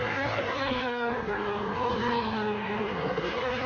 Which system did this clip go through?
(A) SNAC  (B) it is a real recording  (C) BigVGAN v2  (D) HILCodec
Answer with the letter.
A